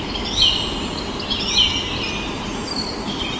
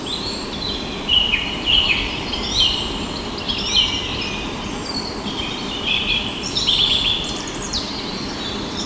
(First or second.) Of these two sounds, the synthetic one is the second